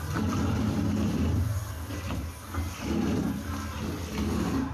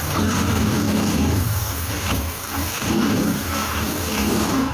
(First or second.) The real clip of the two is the first